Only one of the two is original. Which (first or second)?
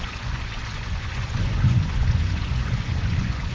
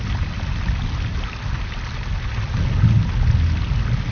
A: second